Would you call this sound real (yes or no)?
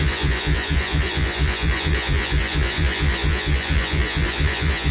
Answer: no